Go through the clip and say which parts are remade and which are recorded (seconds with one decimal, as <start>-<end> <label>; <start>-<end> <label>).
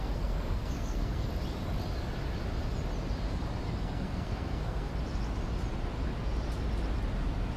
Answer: 0.0-1.3 remade; 1.3-3.8 recorded; 3.8-4.9 remade; 4.9-7.6 recorded